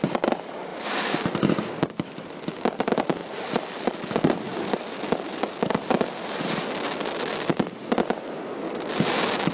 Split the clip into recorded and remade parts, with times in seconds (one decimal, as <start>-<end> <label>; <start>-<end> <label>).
0.0-0.7 recorded; 0.7-1.7 remade; 1.7-9.5 recorded